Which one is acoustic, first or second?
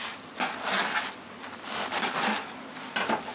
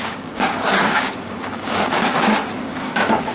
first